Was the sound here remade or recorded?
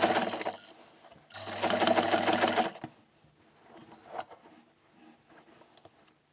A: recorded